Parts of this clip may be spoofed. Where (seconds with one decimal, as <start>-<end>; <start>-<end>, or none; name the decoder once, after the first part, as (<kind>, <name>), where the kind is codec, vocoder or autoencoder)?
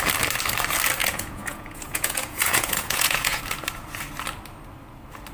1.0-3.4 (vocoder, Vocos)